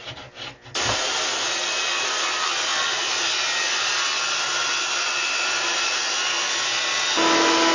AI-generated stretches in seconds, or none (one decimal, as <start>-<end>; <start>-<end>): none